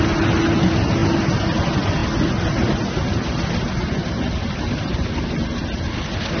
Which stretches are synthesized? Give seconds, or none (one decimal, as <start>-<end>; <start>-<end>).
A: none